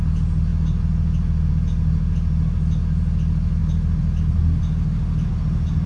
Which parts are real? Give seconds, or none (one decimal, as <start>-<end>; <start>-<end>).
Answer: 0.0-5.9